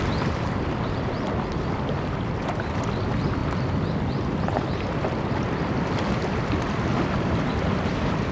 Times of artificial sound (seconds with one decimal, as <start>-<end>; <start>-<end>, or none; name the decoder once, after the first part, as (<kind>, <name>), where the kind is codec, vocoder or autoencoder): none